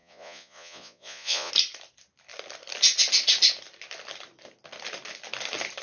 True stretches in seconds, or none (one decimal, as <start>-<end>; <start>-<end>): 1.5-5.8